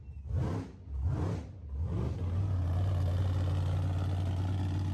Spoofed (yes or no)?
no